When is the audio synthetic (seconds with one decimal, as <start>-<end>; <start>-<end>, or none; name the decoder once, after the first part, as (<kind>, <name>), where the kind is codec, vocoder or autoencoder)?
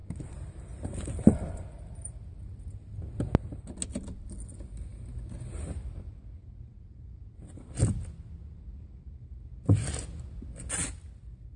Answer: 0.0-2.1 (vocoder, BigVGAN v2); 4.9-6.7